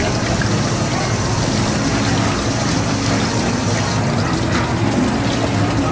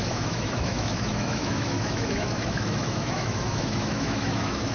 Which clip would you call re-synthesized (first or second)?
second